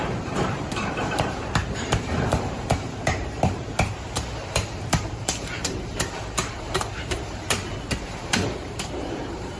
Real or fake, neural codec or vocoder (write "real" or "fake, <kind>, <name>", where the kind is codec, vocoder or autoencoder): fake, vocoder, BigVGAN v2